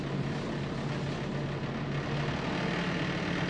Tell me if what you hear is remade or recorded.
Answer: recorded